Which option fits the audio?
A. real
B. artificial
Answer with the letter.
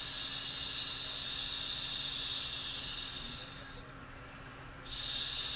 A